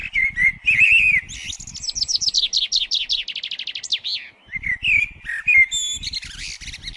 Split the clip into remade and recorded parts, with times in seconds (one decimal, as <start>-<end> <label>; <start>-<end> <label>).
0.0-7.0 recorded